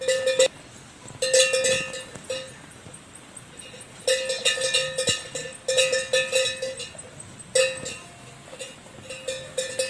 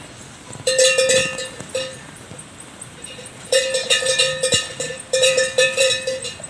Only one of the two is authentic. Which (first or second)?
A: first